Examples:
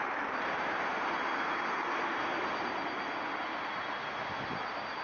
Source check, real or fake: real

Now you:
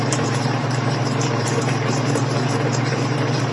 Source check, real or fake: fake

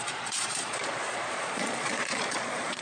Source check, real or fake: fake